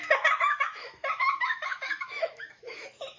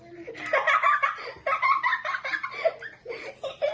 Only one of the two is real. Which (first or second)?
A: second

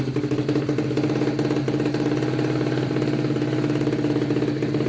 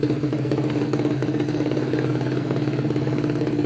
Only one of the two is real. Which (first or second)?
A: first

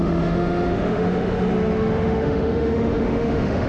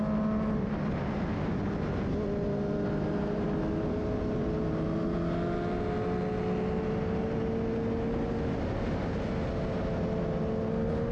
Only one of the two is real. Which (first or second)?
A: second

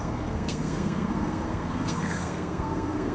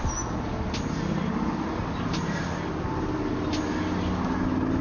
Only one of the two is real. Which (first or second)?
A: second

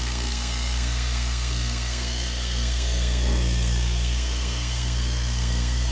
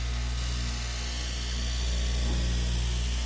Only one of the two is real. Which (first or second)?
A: second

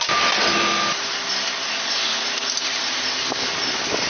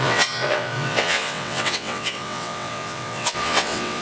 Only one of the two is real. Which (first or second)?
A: first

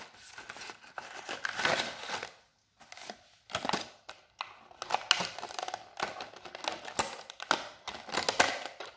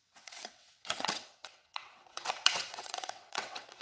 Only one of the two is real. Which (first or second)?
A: first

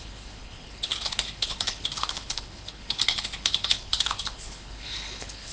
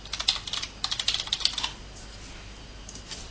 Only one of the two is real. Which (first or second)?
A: second